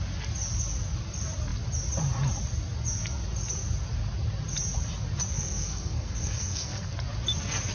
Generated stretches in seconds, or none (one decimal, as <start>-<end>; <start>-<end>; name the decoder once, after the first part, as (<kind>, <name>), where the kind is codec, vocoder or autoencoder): 5.3-6.9 (codec, SNAC)